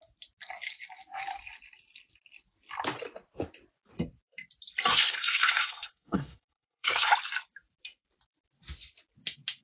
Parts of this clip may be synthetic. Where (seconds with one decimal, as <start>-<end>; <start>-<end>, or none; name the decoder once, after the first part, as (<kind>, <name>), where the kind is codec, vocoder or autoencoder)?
4.9-7.1 (codec, SNAC)